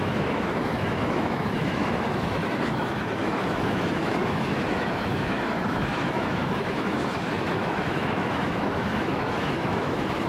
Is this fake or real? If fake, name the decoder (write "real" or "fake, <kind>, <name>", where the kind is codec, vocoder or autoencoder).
fake, autoencoder, DAC-VAE